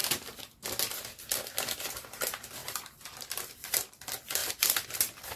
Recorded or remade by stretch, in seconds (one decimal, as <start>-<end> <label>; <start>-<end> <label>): 0.0-2.6 recorded; 2.6-3.9 remade; 3.9-4.4 recorded; 4.4-5.4 remade